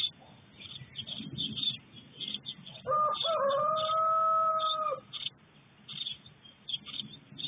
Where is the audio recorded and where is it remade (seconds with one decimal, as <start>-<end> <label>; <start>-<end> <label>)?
0.0-7.5 recorded